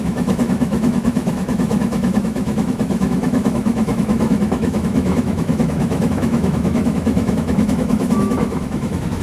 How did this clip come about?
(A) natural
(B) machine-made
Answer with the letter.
B